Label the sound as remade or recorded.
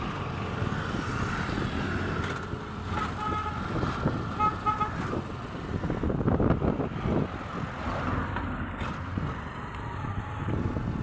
recorded